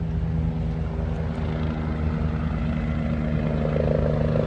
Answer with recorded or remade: recorded